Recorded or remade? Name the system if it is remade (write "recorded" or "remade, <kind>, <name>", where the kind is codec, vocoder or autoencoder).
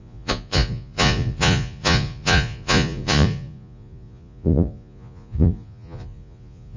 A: remade, vocoder, Vocos